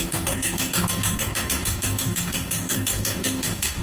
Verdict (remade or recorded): remade